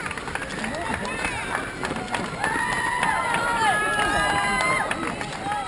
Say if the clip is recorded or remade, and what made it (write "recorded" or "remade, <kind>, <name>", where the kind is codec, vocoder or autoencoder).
recorded